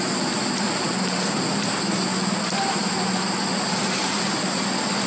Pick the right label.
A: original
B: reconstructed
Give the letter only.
A